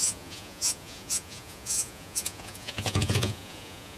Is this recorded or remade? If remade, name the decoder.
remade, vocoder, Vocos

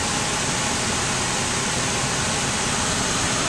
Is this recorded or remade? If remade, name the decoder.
recorded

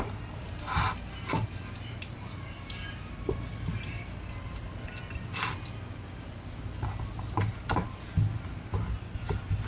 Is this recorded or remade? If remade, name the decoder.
recorded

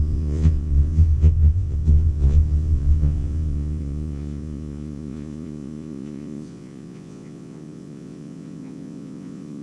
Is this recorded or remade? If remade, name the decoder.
remade, vocoder, Vocos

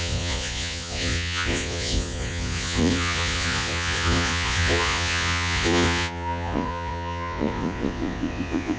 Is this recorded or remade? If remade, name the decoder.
remade, vocoder, Vocos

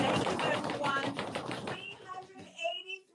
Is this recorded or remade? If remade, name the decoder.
remade, vocoder, Vocos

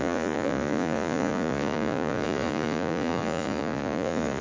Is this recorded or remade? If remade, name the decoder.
remade, vocoder, Vocos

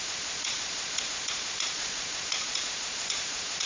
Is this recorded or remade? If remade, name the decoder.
remade, vocoder, Vocos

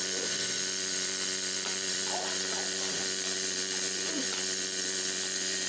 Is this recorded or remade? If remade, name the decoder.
remade, vocoder, Vocos